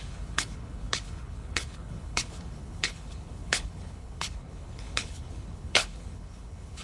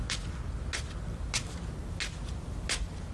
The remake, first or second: first